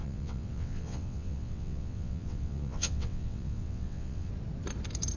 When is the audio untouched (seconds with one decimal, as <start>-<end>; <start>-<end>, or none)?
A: 4.3-5.2